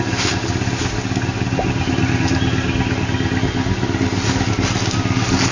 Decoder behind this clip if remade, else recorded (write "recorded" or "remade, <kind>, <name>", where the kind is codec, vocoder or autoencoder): recorded